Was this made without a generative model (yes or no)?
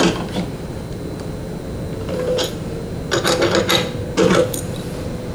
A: yes